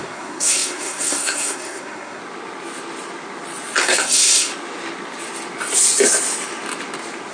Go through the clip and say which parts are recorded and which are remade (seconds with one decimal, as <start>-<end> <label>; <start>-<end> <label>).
0.0-2.2 remade; 2.2-3.8 recorded; 3.8-4.5 remade; 4.5-7.3 recorded

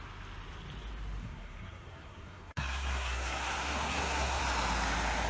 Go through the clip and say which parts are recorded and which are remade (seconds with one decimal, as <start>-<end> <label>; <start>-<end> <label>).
0.0-1.2 recorded; 1.2-4.4 remade; 4.4-5.3 recorded

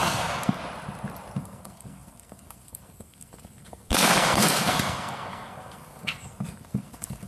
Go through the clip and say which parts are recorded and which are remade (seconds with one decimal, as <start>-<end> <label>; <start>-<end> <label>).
0.0-0.6 remade; 0.6-1.4 recorded; 1.4-7.3 remade